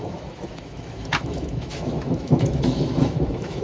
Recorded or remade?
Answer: remade